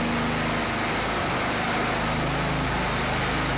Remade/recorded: recorded